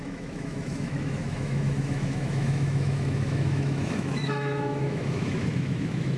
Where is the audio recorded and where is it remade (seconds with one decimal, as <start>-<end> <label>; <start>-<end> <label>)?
0.0-6.2 remade